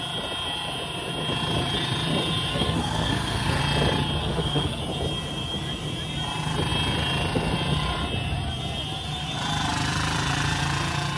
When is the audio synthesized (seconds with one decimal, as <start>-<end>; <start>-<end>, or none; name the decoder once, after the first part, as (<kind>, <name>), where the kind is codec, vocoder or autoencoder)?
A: 2.5-3.6 (codec, SNAC); 4.2-4.8